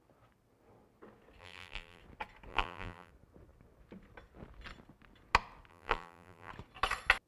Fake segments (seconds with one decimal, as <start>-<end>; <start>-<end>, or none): 1.4-2.0; 2.5-3.1; 5.7-6.5